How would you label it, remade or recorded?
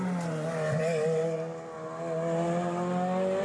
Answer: recorded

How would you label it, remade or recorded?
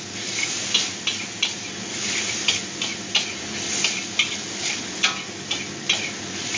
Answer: recorded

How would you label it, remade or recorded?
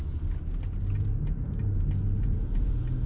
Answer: recorded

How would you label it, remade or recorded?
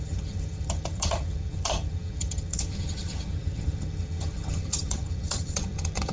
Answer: remade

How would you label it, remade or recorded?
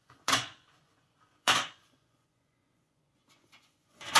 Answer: remade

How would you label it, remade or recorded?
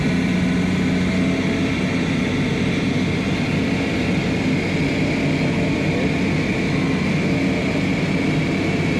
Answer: recorded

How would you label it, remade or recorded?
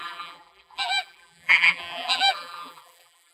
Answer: remade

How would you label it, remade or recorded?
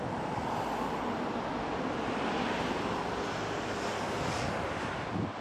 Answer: recorded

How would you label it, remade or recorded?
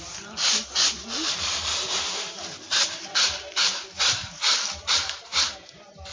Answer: remade